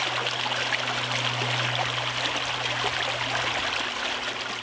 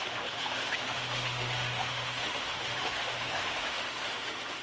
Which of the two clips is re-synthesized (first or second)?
second